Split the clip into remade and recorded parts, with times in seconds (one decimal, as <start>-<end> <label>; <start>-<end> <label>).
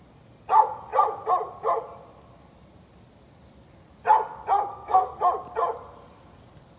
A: 0.0-4.7 recorded; 4.7-5.2 remade; 5.2-6.8 recorded